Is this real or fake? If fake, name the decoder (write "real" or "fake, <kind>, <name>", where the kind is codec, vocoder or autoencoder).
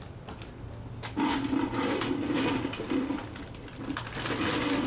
real